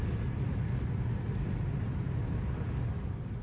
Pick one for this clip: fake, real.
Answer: real